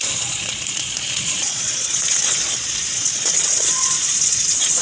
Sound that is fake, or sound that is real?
fake